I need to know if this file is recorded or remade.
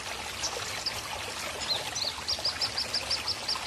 recorded